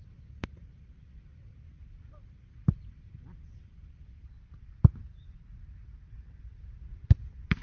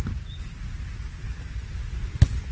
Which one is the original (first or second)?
second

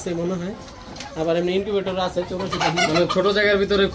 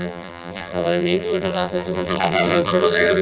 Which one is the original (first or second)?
first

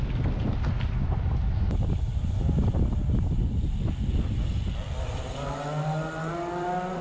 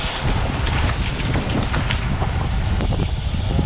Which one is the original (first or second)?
first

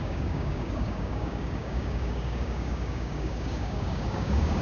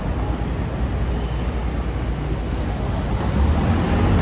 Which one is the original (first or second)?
second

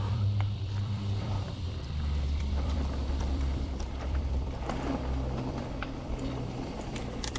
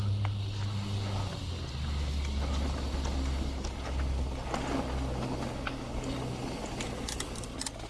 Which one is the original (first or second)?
second